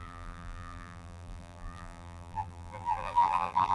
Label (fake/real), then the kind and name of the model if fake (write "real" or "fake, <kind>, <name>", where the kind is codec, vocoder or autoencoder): fake, vocoder, BigVGAN v2